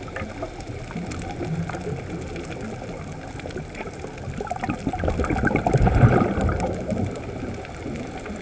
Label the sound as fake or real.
real